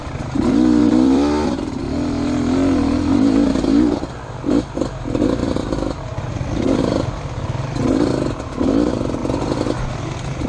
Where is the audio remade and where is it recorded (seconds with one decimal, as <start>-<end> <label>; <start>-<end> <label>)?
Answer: 0.0-0.8 recorded; 0.8-1.8 remade; 1.8-5.4 recorded; 5.4-6.9 remade; 6.9-10.5 recorded